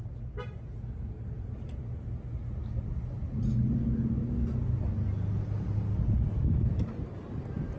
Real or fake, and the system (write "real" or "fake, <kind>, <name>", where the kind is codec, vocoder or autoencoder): real